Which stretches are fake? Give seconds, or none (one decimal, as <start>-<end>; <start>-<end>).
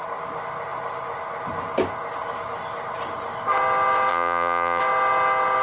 4.1-4.8